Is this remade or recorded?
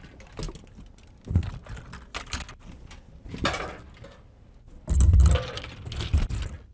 recorded